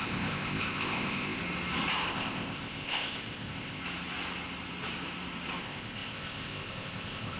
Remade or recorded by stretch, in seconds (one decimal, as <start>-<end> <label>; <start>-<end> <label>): 0.0-1.4 remade; 1.4-2.1 recorded; 2.1-3.8 remade; 3.8-5.6 recorded; 5.6-7.4 remade